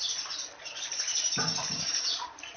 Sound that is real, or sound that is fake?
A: real